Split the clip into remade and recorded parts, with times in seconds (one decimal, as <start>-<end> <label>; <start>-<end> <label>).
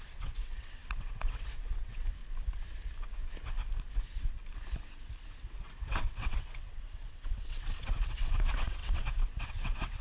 0.0-2.2 remade; 2.2-5.4 recorded; 5.4-10.0 remade